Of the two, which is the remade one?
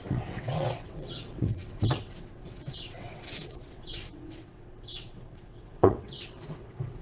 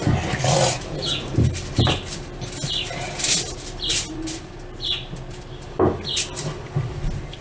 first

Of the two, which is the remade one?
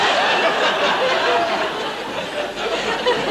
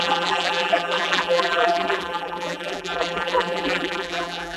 second